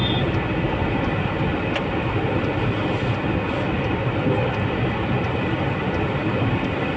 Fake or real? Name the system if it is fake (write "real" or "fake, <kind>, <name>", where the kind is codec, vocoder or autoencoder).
real